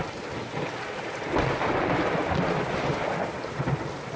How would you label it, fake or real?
real